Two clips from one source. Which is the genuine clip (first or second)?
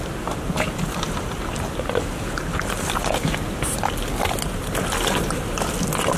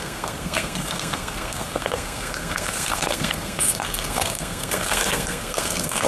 first